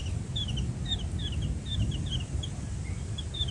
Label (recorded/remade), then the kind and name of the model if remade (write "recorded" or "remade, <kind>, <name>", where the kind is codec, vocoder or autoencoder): recorded